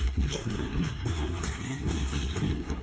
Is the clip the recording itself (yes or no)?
no